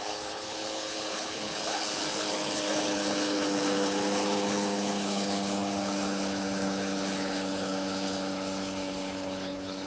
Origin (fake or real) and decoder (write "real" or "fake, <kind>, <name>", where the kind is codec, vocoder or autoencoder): fake, codec, HILCodec